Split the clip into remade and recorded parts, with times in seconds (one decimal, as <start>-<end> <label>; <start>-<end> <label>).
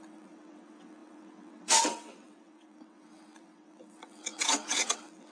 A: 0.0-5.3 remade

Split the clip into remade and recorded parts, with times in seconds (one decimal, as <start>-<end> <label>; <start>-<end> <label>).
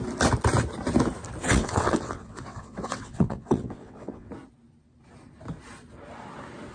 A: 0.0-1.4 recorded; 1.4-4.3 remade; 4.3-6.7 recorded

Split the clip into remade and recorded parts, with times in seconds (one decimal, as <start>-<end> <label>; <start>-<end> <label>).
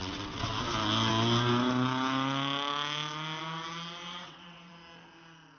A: 0.0-0.5 remade; 0.5-4.1 recorded; 4.1-4.7 remade; 4.7-5.6 recorded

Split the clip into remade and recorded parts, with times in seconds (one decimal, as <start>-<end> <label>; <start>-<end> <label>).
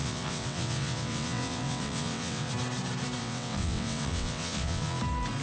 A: 0.0-2.5 remade; 2.5-3.2 recorded; 3.2-5.0 remade; 5.0-5.4 recorded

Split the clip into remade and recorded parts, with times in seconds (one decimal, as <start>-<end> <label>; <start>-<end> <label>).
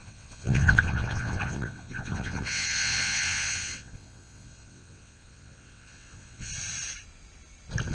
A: 0.0-6.5 remade; 6.5-7.9 recorded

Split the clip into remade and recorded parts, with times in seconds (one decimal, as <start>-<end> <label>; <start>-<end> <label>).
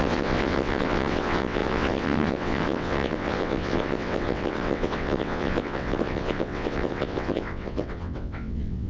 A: 0.0-8.9 remade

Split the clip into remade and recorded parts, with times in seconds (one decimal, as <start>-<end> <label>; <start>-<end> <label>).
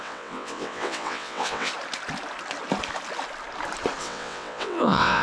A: 0.0-1.7 remade; 1.7-4.0 recorded; 4.0-5.2 remade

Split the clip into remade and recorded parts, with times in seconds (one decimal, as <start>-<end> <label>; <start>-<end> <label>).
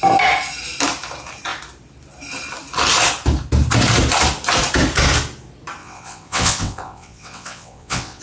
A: 0.0-5.8 recorded; 5.8-8.2 remade